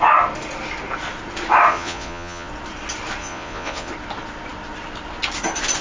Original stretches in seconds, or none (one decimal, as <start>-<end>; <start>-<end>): 0.0-1.7; 2.5-3.2; 3.9-5.8